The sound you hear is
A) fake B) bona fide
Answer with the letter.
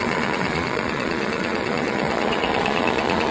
A